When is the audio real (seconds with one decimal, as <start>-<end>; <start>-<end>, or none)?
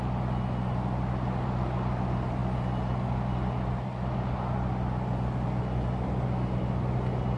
0.0-7.4